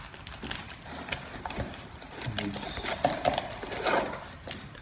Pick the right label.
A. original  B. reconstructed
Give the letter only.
A